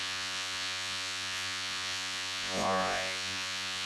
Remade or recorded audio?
remade